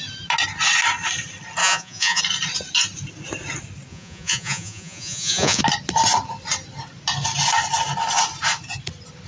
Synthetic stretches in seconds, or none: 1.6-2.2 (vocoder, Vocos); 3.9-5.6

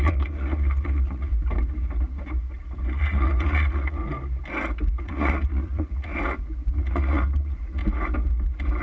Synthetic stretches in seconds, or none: 0.0-1.3 (vocoder, Vocos); 2.9-4.0; 5.0-6.1; 6.7-7.8